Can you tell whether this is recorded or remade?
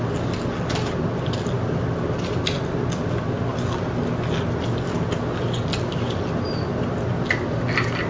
recorded